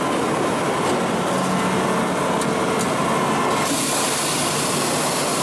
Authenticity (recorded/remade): recorded